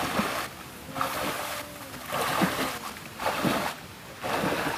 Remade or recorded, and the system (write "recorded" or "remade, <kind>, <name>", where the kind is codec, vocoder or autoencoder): recorded